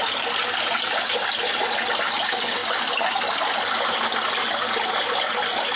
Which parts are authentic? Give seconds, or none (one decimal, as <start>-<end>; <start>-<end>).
0.0-5.8